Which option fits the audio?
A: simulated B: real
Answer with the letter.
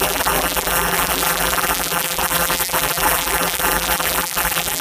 A